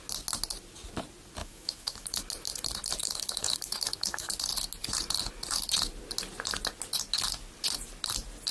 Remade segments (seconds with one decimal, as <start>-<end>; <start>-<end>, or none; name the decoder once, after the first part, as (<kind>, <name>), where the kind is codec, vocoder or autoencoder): 1.4-2.2 (autoencoder, DAC-VAE); 3.0-4.3